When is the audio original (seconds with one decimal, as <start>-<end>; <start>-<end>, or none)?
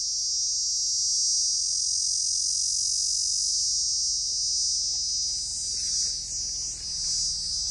0.0-7.7